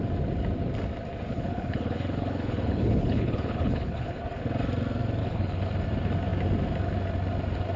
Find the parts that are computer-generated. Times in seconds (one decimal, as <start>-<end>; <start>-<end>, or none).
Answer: 1.3-4.2; 5.2-5.7